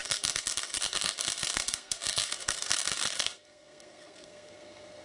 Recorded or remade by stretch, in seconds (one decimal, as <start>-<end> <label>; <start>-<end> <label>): 0.0-5.0 remade